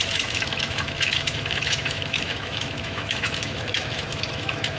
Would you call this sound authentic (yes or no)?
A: no